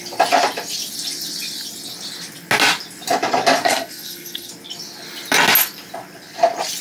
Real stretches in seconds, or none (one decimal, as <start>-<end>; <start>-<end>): 0.0-3.6; 4.5-6.8